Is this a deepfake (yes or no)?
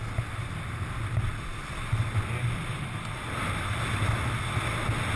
no